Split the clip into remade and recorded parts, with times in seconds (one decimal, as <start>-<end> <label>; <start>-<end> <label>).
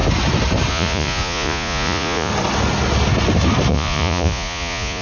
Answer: 0.0-0.7 recorded; 0.7-2.3 remade; 2.3-3.7 recorded; 3.7-5.0 remade